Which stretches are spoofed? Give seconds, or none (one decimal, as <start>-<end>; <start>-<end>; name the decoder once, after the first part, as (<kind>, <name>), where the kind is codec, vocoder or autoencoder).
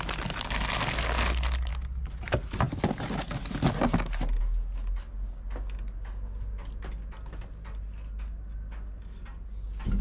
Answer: none